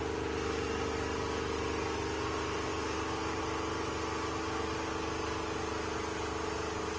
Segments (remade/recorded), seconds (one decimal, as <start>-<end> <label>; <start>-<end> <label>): 0.0-7.0 recorded